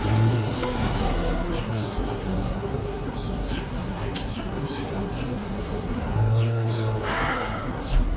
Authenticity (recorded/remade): remade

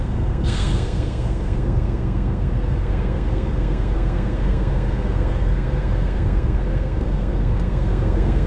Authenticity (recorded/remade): remade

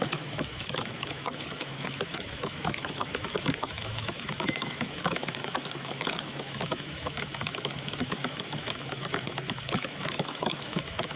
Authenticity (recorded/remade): remade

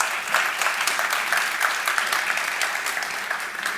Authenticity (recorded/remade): recorded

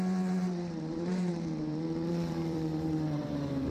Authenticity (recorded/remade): remade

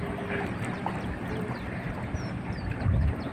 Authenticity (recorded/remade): recorded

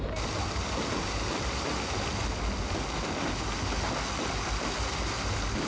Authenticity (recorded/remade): recorded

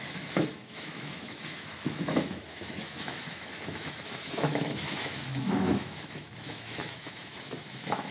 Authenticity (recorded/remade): remade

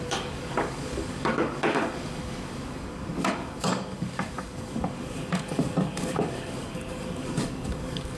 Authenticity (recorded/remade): remade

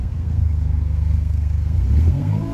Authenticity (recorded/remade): remade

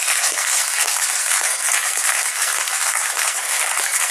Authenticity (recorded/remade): remade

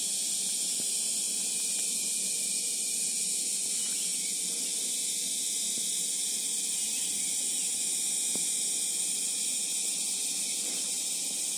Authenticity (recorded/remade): recorded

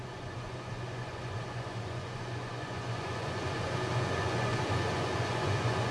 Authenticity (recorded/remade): remade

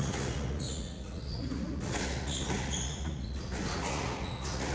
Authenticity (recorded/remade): remade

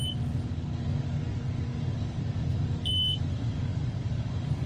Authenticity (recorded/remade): remade